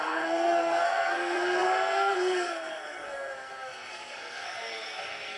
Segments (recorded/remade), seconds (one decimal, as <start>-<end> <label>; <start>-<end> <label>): 0.0-5.4 remade